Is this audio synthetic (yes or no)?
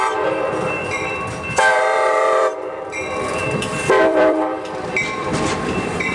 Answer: yes